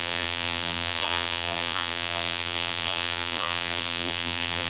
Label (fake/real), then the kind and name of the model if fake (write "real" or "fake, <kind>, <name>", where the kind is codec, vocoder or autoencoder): fake, vocoder, BigVGAN v2